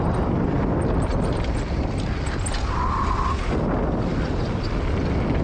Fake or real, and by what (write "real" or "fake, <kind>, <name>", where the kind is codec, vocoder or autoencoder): real